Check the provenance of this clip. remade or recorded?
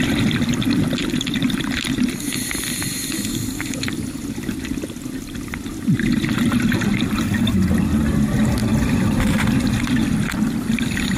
recorded